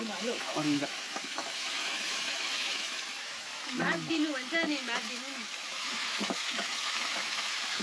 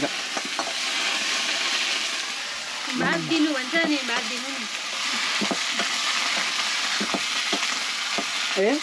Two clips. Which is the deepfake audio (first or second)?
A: first